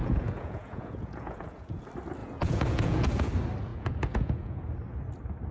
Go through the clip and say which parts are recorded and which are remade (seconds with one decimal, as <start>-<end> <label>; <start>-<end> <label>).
0.0-1.8 remade; 1.8-2.2 recorded; 2.2-3.3 remade; 3.3-3.7 recorded; 3.7-4.7 remade; 4.7-5.5 recorded